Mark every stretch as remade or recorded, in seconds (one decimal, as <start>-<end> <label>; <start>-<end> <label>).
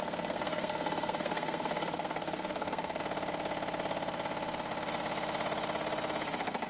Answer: 0.0-3.0 remade; 3.0-6.7 recorded